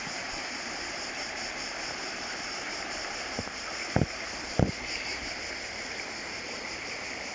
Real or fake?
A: real